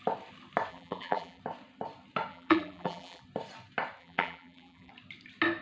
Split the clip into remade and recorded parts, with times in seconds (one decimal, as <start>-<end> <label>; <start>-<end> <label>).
0.0-0.7 recorded; 0.7-1.4 remade; 1.4-2.3 recorded; 2.3-3.2 remade; 3.2-4.0 recorded; 4.0-4.9 remade; 4.9-5.6 recorded